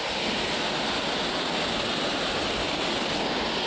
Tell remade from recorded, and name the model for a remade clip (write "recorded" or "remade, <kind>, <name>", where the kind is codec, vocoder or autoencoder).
recorded